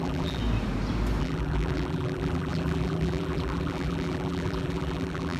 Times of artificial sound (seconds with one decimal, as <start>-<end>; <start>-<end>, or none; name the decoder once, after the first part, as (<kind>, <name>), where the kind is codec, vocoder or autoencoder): 0.0-0.4 (vocoder, BigVGAN v2); 1.2-5.4